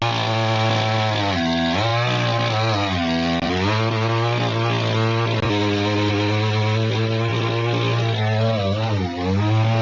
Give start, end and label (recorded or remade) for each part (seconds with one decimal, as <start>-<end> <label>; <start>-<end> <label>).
0.0-9.8 recorded

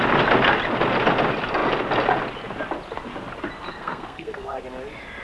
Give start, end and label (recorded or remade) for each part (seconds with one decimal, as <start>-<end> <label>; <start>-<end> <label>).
0.0-3.7 recorded; 3.7-4.6 remade; 4.6-5.2 recorded

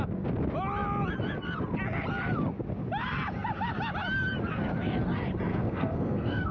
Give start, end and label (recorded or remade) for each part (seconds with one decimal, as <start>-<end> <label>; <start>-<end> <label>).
0.0-5.5 recorded; 5.5-6.5 remade

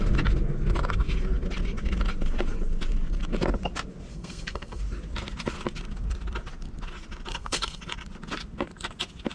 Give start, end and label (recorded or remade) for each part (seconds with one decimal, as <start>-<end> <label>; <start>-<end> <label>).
0.0-4.1 recorded; 4.1-4.8 remade; 4.8-7.3 recorded; 7.3-7.8 remade; 7.8-9.3 recorded

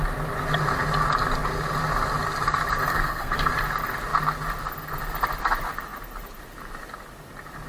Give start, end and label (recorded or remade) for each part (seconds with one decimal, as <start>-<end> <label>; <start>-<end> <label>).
0.0-2.9 recorded; 2.9-3.5 remade; 3.5-7.7 recorded